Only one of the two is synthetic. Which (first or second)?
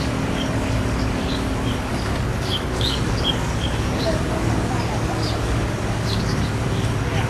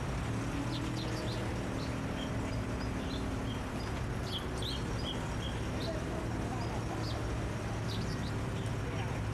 first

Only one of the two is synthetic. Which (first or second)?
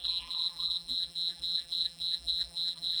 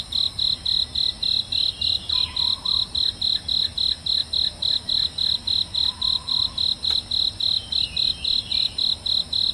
first